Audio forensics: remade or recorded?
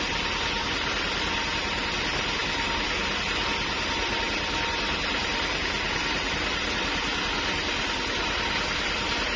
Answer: recorded